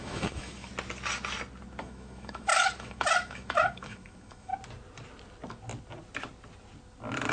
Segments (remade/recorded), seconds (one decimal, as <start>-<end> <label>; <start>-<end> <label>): 0.0-0.7 remade; 0.7-1.8 recorded; 1.8-4.5 remade; 4.5-7.3 recorded